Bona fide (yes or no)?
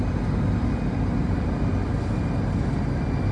yes